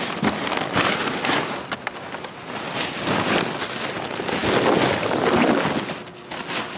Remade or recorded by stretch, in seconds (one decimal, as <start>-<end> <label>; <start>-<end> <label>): 0.0-6.8 recorded